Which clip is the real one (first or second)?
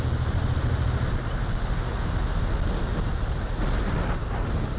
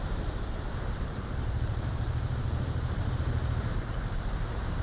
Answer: first